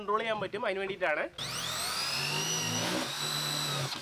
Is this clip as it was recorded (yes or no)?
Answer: yes